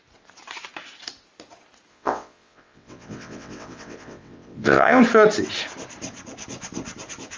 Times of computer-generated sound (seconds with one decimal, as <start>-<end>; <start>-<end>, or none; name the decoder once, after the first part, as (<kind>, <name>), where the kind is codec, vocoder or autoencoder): 1.9-5.0 (vocoder, WaveNeXt)